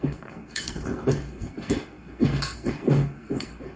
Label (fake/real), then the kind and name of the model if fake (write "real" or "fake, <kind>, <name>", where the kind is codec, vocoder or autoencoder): fake, codec, SNAC